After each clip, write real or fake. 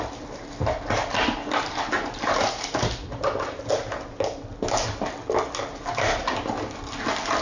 real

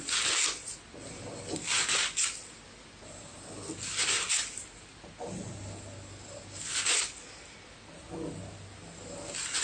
real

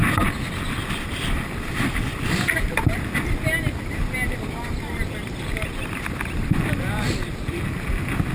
real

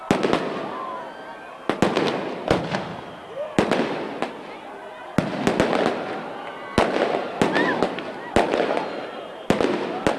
real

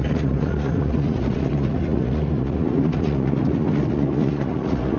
fake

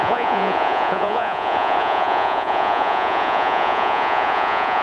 fake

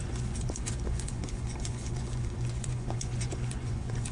fake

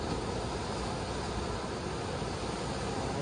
real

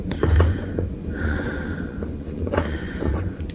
fake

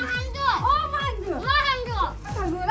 real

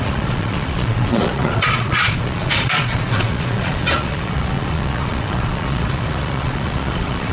fake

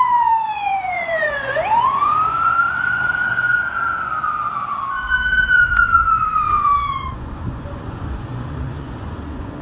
fake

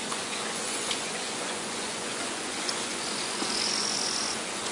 fake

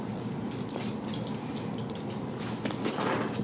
real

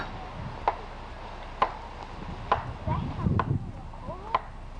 real